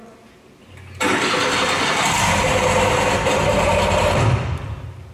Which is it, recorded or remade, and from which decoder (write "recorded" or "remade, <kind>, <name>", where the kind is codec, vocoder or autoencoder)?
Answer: recorded